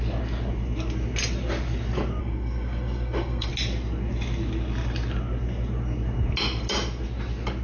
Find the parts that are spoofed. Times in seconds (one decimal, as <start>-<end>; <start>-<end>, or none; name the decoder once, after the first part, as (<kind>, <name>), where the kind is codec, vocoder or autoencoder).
2.2-3.5 (codec, SNAC)